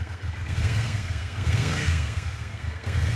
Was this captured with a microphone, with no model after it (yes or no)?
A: no